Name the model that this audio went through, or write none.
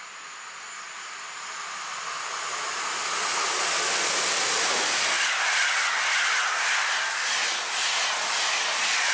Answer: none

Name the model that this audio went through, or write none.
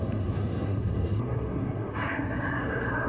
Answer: codec, SNAC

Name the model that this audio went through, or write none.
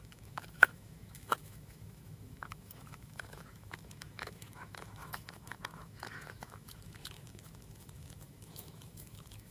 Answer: autoencoder, DAC-VAE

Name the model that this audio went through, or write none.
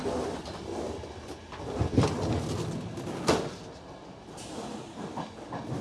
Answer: none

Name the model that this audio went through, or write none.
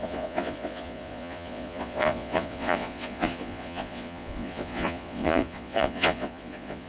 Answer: vocoder, Vocos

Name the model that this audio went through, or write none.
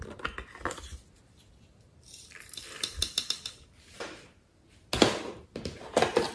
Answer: none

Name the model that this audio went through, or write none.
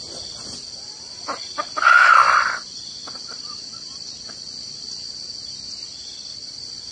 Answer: none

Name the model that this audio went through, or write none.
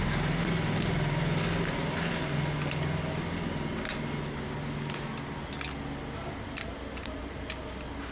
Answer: none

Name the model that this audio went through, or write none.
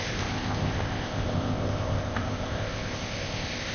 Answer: codec, ZipCodec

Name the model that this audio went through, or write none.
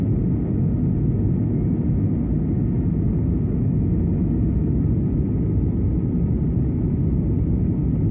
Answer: none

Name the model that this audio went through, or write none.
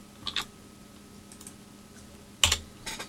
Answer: none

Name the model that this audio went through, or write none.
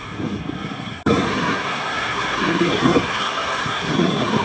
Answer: codec, SNAC